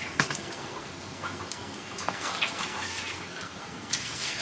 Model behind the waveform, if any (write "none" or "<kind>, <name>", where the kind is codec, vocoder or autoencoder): codec, SNAC